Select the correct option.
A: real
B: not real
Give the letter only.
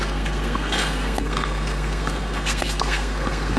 B